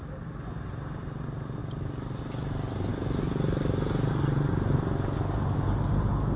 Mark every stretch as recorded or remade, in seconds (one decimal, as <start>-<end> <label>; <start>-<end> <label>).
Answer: 0.0-6.4 recorded